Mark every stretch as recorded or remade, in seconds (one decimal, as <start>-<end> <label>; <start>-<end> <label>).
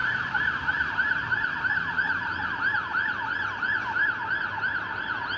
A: 0.0-5.4 recorded